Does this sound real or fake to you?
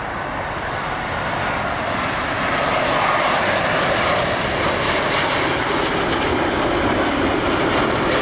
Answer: real